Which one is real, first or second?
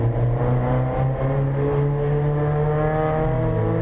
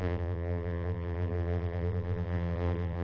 first